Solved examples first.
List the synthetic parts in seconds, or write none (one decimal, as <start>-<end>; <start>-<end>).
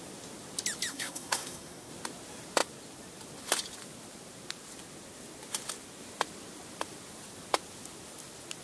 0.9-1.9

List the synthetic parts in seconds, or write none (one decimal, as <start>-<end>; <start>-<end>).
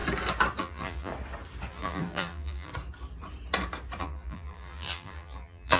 0.6-1.1; 1.7-2.7; 4.0-5.8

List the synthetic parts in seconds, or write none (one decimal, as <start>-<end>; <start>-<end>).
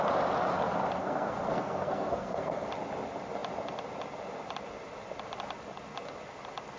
1.0-2.7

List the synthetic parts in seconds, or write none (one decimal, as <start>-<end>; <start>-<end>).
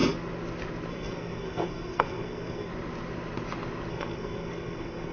0.9-2.7; 3.9-5.1